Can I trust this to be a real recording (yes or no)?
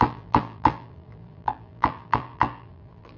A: no